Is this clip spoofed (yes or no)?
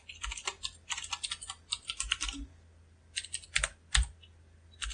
no